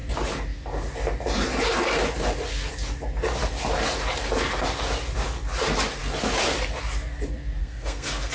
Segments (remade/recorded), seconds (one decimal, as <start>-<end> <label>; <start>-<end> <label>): 0.0-7.6 recorded; 7.6-8.3 remade